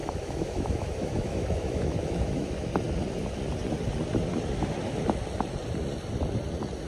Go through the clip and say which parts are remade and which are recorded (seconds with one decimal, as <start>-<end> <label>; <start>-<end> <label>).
0.0-2.7 remade; 2.7-6.9 recorded